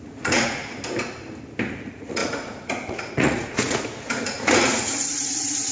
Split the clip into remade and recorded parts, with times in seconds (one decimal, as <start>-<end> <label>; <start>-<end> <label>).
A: 0.0-0.6 remade; 0.6-1.8 recorded; 1.8-5.7 remade